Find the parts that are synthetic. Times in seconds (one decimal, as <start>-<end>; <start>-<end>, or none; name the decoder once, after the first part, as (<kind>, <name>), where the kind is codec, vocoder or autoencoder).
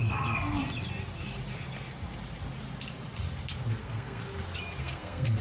0.0-0.6 (codec, SNAC); 3.8-4.2; 4.8-5.4